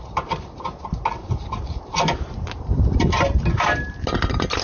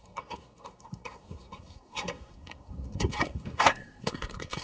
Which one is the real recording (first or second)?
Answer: first